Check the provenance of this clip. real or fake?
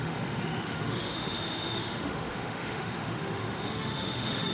fake